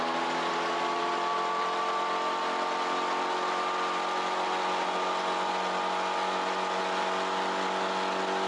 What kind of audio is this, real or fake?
real